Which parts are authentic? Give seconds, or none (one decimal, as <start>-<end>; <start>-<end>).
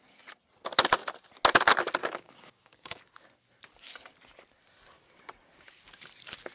0.0-2.0; 3.0-6.5